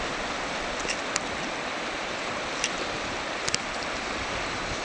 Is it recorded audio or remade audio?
remade